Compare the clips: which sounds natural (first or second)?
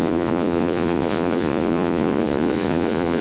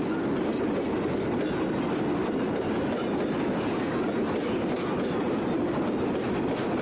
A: second